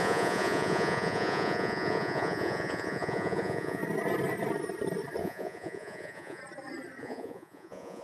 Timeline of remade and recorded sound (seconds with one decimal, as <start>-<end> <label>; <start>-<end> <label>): 0.0-3.8 remade; 3.8-5.2 recorded; 5.2-6.4 remade; 6.4-7.0 recorded; 7.0-8.0 remade